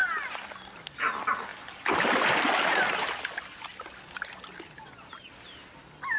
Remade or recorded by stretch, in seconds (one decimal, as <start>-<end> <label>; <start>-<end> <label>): 0.0-6.2 recorded